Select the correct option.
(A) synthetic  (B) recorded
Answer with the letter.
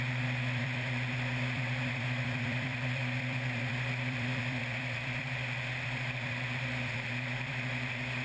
A